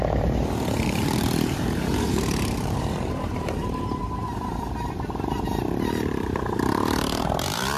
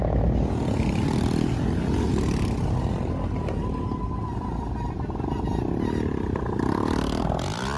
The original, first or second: second